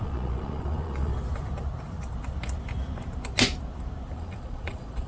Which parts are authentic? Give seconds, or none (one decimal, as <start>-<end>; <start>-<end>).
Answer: 1.1-4.2